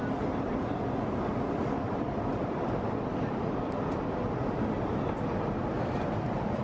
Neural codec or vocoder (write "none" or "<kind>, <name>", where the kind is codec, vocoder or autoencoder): vocoder, BigVGAN v2